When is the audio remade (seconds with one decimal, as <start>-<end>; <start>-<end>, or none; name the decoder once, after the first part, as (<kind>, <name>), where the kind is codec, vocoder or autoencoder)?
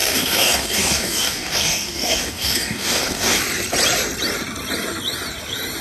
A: 0.0-3.4 (codec, DAC)